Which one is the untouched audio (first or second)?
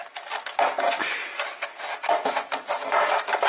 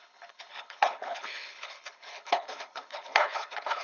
first